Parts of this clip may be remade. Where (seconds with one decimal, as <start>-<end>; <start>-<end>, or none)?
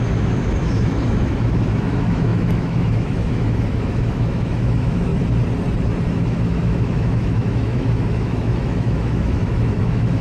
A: 0.0-5.1; 6.1-10.2